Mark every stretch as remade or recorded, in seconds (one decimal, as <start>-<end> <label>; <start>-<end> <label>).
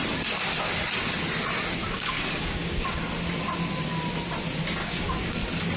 0.0-1.8 recorded; 1.8-3.0 remade; 3.0-4.8 recorded; 4.8-5.3 remade; 5.3-5.8 recorded